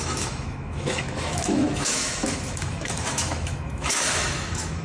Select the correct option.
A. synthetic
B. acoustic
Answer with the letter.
A